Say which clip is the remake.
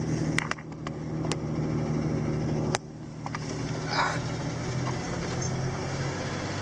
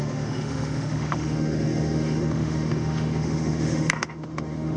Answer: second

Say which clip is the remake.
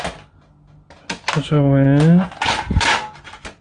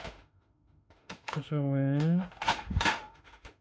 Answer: second